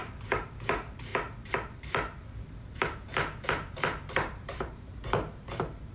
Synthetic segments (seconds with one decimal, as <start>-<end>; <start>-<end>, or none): 0.0-1.1; 2.4-5.9